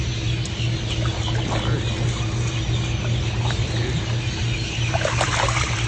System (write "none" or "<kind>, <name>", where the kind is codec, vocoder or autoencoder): none